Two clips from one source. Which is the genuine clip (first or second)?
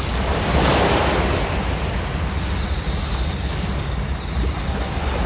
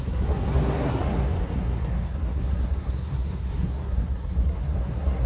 first